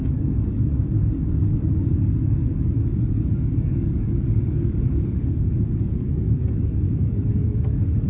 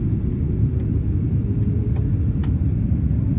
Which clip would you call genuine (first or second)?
second